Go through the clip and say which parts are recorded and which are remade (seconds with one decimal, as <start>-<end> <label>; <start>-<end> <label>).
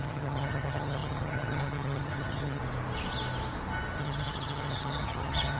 0.0-2.6 remade; 2.6-4.0 recorded; 4.0-5.6 remade